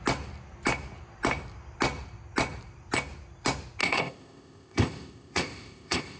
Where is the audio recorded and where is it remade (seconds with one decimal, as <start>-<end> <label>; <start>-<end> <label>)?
0.0-3.8 recorded; 3.8-6.2 remade